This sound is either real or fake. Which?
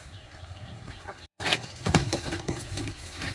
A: fake